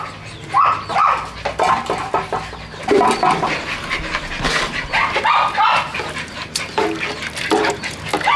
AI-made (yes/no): no